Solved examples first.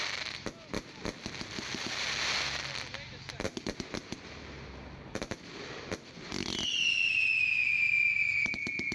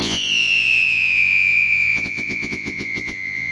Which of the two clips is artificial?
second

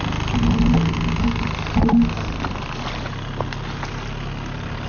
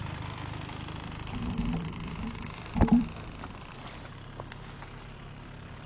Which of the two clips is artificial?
second